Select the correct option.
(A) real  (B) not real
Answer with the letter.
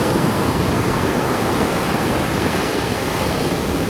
B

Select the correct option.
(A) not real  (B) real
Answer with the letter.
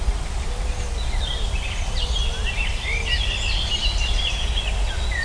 B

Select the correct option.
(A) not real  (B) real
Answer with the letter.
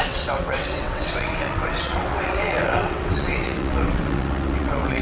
A